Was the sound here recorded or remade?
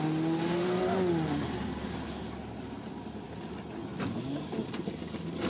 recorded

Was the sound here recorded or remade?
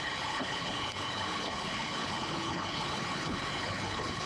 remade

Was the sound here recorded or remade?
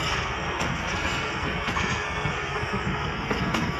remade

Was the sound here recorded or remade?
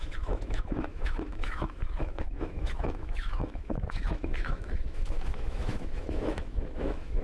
remade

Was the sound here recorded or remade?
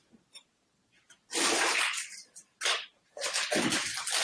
recorded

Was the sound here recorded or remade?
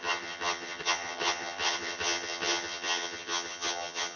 remade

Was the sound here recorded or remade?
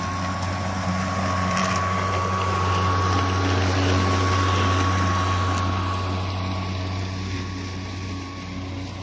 recorded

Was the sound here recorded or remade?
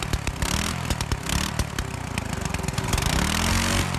recorded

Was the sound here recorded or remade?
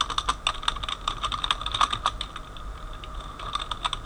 recorded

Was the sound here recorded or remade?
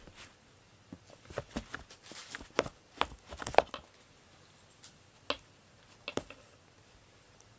recorded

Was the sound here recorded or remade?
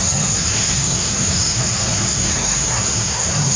remade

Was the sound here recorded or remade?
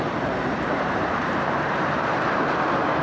remade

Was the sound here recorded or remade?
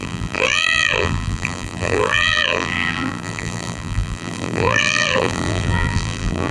remade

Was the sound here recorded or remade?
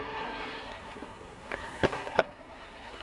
remade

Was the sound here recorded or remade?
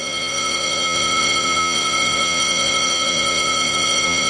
remade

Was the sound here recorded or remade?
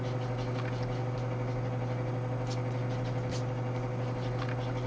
recorded